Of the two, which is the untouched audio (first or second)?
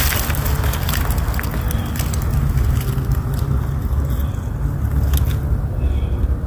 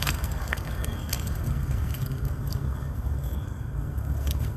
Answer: first